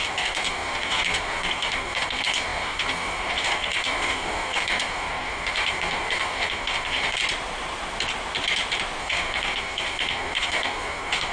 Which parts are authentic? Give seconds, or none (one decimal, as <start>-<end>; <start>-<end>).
7.2-9.0